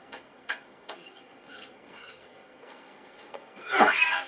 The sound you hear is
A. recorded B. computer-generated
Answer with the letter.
B